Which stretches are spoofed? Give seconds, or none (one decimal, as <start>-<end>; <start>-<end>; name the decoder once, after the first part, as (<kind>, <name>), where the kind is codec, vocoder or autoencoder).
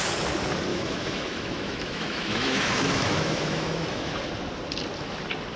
0.7-4.1 (autoencoder, DAC-VAE)